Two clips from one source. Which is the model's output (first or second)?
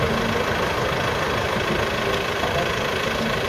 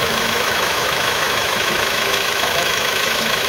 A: second